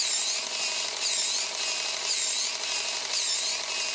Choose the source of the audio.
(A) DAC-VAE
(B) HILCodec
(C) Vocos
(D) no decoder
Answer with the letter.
D